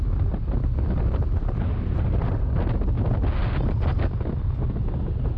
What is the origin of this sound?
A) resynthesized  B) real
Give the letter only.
B